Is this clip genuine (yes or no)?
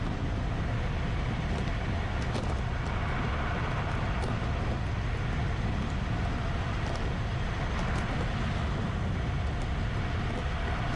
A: yes